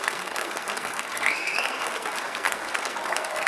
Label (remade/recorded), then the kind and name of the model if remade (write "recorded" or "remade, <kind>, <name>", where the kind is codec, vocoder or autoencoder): remade, codec, SNAC